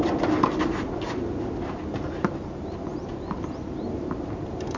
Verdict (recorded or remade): recorded